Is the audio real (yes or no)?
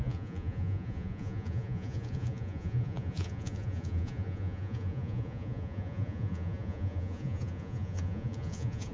no